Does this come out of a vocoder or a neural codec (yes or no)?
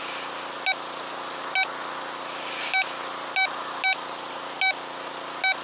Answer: no